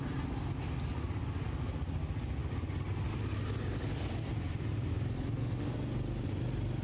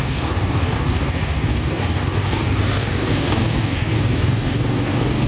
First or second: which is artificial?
second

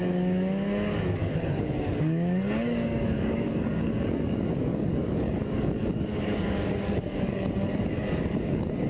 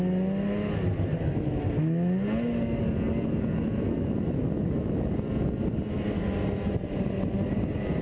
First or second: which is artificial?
first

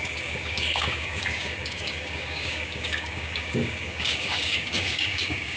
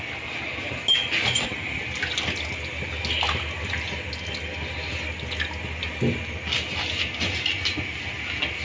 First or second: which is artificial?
first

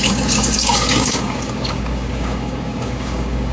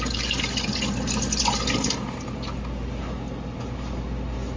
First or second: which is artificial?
first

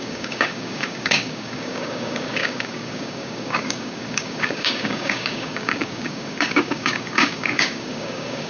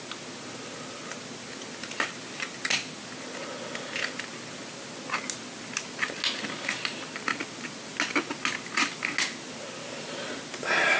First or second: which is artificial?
first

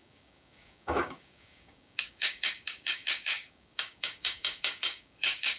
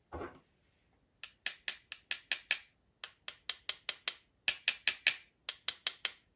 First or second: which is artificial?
first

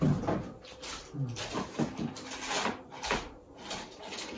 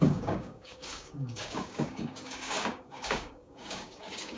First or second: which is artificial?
second